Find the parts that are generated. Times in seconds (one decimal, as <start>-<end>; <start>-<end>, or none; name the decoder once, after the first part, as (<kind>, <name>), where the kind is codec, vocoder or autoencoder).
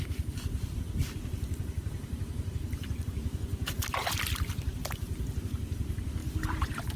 3.5-5.4 (vocoder, BigVGAN v2); 6.2-7.0